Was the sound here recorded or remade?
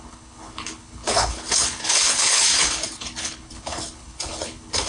remade